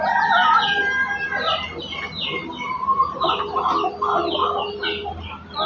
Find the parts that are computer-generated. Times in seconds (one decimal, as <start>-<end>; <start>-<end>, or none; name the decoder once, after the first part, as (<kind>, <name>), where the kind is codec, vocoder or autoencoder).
none